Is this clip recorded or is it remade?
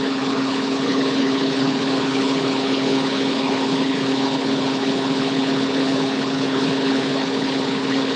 remade